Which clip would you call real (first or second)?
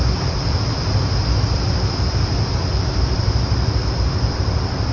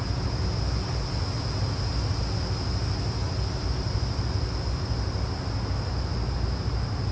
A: second